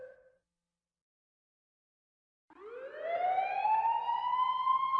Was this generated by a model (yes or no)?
no